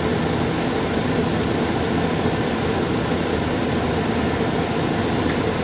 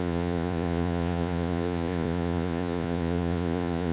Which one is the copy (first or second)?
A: second